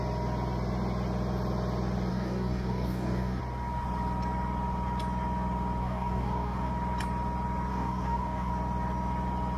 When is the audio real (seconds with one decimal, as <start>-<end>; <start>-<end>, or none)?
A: 0.0-2.1; 3.4-5.8; 6.7-7.7; 8.5-9.6

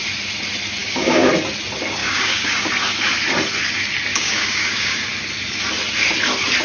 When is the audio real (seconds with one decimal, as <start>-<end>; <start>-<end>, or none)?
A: 0.0-0.8; 1.3-2.0; 2.7-4.1; 5.1-6.6

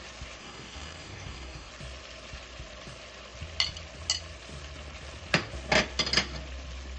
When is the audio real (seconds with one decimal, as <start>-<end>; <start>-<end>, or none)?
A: 0.0-0.4; 1.7-7.0

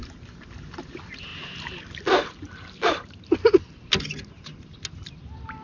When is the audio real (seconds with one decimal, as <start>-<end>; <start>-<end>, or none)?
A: 0.0-5.6

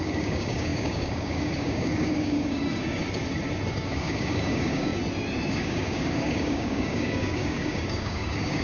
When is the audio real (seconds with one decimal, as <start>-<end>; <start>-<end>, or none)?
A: 3.0-3.7; 4.9-5.5

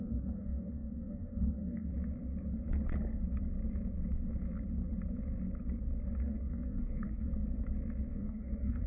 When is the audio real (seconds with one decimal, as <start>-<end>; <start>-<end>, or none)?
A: 1.9-6.2; 7.3-8.1

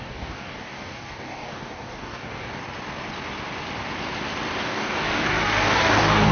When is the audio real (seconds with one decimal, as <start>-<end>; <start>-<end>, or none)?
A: 2.6-4.6

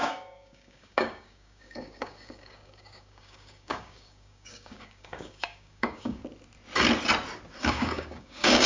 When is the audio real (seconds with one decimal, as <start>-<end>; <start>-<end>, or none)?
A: 6.2-7.6